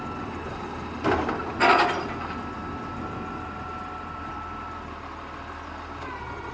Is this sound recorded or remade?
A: recorded